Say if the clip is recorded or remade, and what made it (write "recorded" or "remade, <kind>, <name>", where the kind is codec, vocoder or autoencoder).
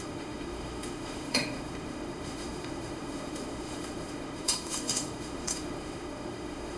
remade, autoencoder, DAC-VAE